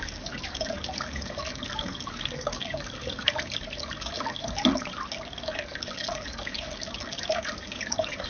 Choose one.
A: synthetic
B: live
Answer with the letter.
A